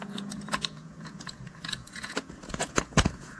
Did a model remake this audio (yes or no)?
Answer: yes